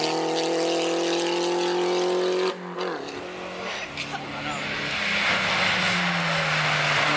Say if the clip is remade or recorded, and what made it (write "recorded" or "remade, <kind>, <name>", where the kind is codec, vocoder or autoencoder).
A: recorded